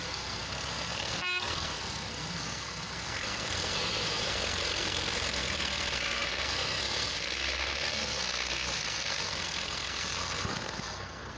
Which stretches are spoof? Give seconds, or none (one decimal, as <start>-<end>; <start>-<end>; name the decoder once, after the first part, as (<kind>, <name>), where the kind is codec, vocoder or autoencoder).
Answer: 0.0-11.4 (codec, SNAC)